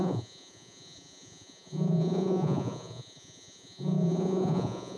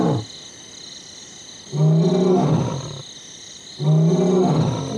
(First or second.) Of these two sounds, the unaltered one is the second